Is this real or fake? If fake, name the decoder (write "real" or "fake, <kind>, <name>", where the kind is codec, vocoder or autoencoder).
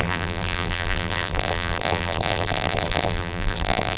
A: fake, vocoder, BigVGAN v2